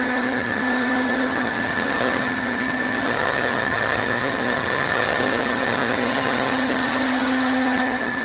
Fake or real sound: fake